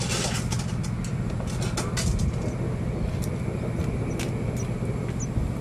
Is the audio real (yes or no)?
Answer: yes